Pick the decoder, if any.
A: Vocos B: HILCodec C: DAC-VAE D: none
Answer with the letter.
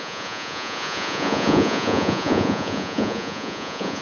A